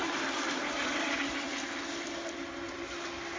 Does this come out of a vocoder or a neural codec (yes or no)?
no